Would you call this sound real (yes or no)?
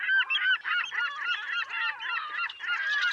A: yes